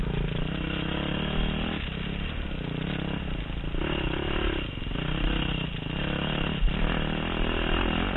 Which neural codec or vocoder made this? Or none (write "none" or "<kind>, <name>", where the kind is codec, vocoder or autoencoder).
none